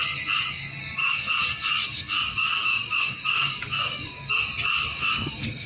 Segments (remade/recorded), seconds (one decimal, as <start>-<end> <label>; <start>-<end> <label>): 0.0-1.0 recorded; 1.0-4.3 remade; 4.3-4.9 recorded; 4.9-5.7 remade